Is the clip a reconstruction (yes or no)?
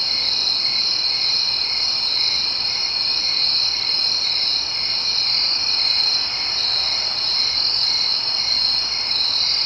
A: no